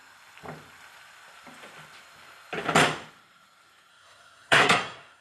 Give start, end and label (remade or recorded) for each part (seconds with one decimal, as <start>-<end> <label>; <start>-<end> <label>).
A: 0.0-3.9 recorded; 3.9-5.2 remade